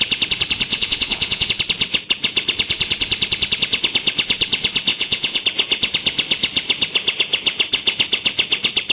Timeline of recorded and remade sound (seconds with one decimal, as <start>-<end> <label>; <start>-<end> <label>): 0.0-0.7 recorded; 0.7-1.5 remade; 1.5-4.9 recorded; 4.9-5.4 remade; 5.4-8.9 recorded